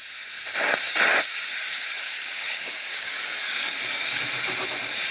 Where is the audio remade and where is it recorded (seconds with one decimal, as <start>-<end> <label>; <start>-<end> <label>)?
0.0-1.1 recorded; 1.1-4.2 remade; 4.2-5.1 recorded